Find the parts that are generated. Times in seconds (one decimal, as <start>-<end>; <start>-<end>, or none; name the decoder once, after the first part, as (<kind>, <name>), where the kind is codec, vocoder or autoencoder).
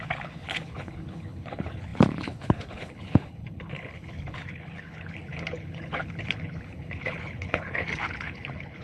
0.0-8.8 (codec, HILCodec)